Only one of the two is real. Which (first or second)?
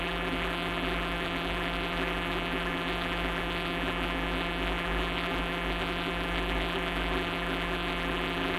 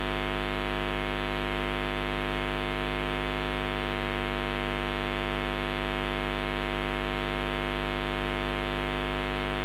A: second